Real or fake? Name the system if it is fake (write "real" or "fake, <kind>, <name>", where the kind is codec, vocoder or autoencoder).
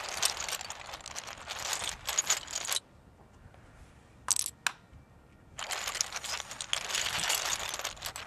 real